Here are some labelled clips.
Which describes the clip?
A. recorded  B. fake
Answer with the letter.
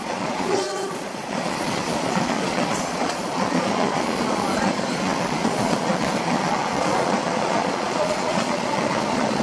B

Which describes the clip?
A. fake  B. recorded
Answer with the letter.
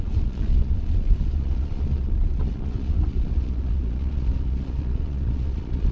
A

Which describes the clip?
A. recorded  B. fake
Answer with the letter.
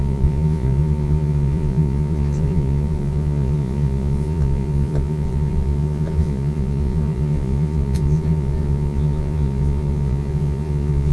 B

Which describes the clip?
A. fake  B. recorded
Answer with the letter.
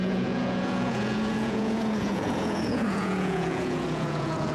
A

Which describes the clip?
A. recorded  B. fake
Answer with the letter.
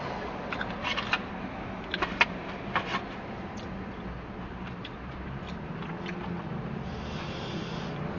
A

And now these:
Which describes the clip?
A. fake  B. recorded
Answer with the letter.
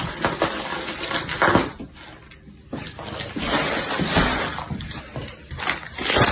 B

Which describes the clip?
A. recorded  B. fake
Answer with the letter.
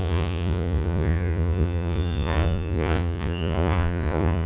B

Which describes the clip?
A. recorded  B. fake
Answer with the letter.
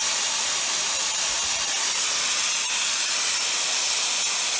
A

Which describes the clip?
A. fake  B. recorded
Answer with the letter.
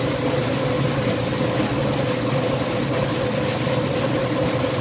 B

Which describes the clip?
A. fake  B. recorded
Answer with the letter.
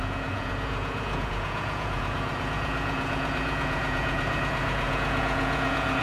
A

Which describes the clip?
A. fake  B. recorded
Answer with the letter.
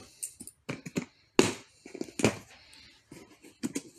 B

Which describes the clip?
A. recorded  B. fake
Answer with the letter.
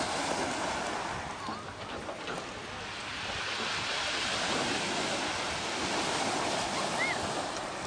A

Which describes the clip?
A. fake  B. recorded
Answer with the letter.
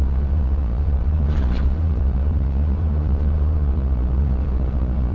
A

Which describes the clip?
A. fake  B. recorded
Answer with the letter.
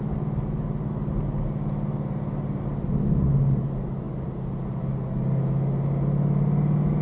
B